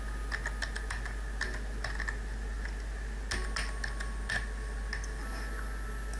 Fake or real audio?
real